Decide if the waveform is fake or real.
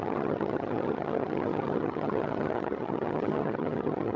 fake